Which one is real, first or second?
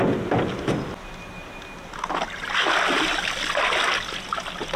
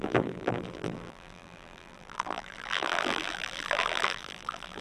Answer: first